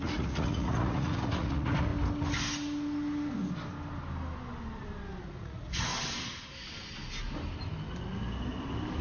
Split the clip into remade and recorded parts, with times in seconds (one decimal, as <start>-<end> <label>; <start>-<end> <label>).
0.0-1.9 remade; 1.9-5.2 recorded; 5.2-5.9 remade; 5.9-9.0 recorded